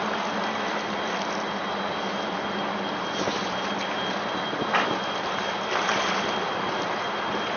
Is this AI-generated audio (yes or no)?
no